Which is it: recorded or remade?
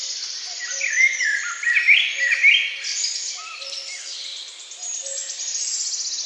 recorded